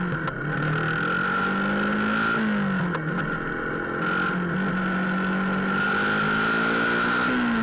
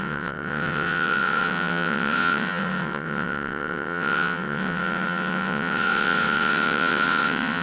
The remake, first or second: second